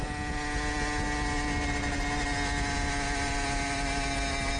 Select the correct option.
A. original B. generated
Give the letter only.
A